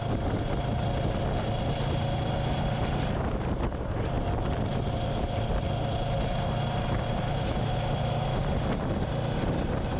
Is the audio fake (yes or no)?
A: no